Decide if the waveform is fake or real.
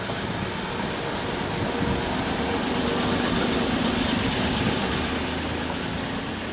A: real